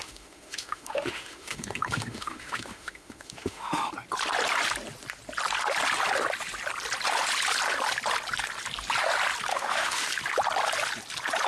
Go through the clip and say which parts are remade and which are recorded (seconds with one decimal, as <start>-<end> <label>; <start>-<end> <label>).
0.0-3.9 remade; 3.9-9.5 recorded; 9.5-10.1 remade; 10.1-11.5 recorded